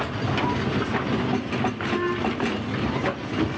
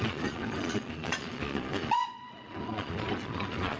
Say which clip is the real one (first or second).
first